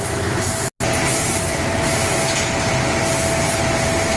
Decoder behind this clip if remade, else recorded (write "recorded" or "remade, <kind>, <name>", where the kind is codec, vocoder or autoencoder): recorded